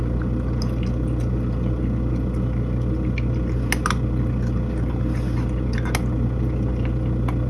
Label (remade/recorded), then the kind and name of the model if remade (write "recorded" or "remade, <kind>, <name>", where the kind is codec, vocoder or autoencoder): recorded